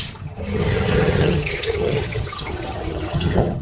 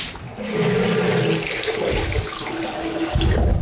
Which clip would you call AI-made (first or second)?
first